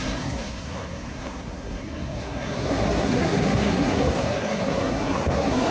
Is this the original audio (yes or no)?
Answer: no